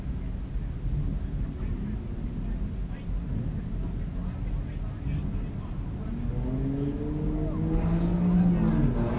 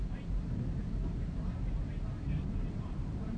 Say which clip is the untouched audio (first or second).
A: first